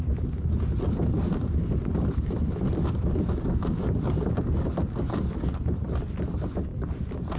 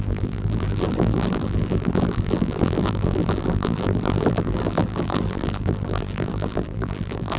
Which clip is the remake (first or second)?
second